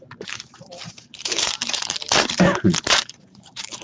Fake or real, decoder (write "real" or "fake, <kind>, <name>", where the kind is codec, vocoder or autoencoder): fake, vocoder, BigVGAN v2